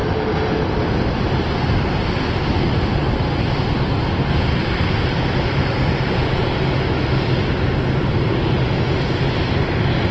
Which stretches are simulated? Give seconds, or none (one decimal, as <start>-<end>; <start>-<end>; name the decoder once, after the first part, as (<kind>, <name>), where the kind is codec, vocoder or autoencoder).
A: none